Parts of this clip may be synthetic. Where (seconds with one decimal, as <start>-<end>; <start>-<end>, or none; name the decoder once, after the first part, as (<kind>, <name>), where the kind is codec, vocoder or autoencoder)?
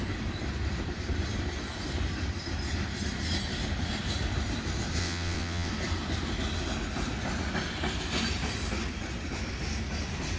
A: 5.0-5.7 (vocoder, WaveNeXt)